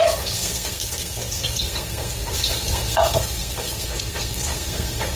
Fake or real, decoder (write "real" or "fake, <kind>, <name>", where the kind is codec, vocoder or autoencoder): fake, codec, SNAC